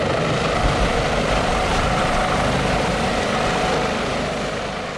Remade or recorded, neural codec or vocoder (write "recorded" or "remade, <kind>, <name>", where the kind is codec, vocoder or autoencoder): recorded